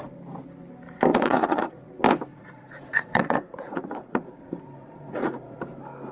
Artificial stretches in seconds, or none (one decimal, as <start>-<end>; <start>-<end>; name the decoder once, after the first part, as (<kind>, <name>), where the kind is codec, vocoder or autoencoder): 1.1-1.9 (vocoder, Vocos); 2.3-5.6

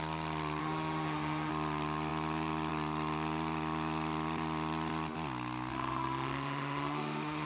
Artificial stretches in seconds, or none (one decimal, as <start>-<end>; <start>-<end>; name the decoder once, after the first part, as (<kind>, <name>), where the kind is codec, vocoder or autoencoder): 0.6-1.5 (autoencoder, DAC-VAE); 5.7-7.5